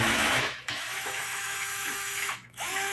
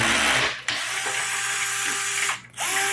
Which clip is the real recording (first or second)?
second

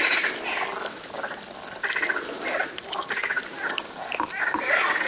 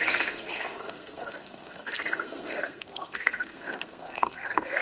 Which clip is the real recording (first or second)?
first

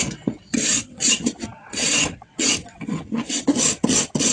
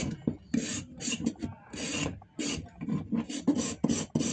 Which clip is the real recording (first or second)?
second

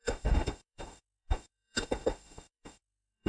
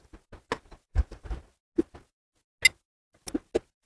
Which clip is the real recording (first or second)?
second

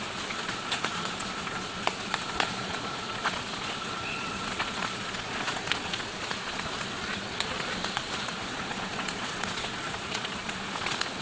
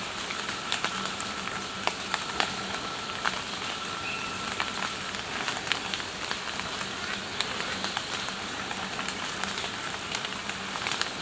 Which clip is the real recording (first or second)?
second